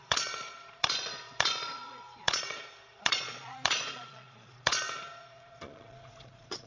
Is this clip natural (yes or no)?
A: no